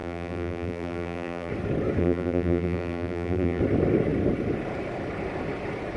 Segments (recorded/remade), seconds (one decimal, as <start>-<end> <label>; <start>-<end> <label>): 0.0-1.5 remade; 1.5-2.0 recorded; 2.0-3.6 remade; 3.6-6.0 recorded